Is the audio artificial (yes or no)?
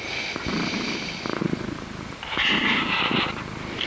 no